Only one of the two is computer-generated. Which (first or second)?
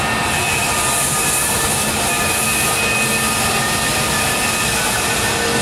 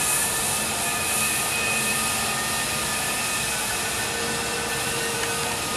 second